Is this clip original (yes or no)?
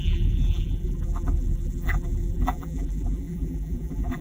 no